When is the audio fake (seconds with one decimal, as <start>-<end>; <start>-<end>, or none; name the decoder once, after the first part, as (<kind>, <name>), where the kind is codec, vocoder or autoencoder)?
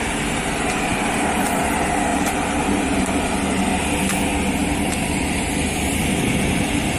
2.1-3.2 (vocoder, BigVGAN v2); 4.6-5.4